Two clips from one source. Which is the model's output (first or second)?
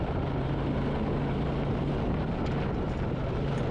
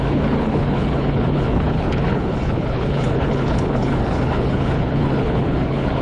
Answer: second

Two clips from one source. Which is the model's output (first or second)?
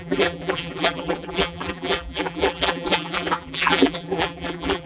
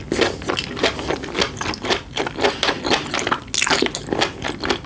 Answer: first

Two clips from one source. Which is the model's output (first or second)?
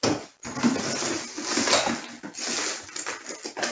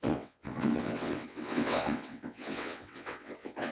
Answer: second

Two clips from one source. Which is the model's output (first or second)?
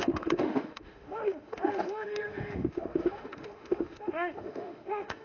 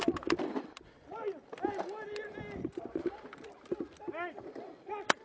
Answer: first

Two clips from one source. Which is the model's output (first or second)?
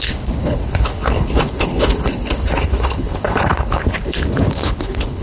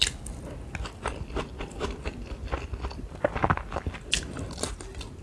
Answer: first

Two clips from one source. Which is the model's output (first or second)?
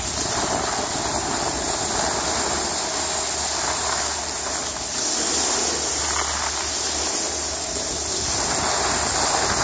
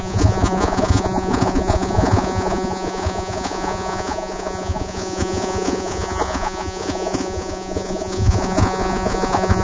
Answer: second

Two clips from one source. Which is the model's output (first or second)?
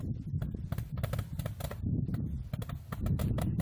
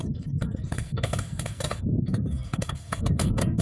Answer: second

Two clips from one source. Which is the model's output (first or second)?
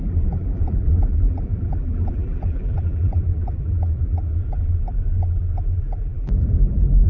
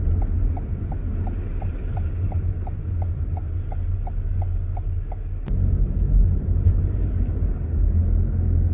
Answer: first